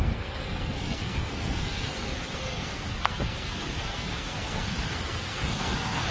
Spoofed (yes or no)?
yes